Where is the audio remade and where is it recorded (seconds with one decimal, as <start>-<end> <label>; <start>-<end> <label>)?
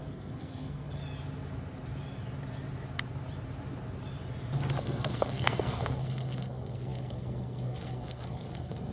0.0-1.0 remade; 1.0-4.8 recorded; 4.8-8.9 remade